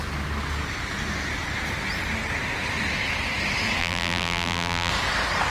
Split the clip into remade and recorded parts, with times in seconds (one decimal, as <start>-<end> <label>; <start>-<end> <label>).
0.0-3.8 recorded; 3.8-4.9 remade; 4.9-5.5 recorded